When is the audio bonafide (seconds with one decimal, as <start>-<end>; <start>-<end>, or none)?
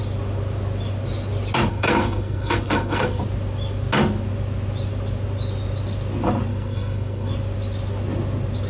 0.0-1.7; 3.2-6.5; 7.3-8.7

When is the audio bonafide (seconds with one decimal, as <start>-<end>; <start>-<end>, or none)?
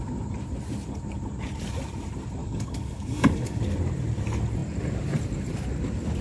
0.0-2.4; 3.6-6.2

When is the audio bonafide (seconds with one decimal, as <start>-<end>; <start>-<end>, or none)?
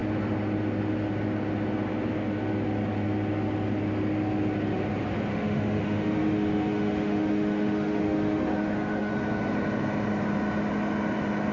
0.0-5.3; 9.1-11.5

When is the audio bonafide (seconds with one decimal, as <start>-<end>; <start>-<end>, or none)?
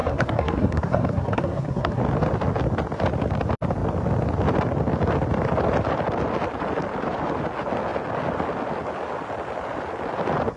2.0-10.6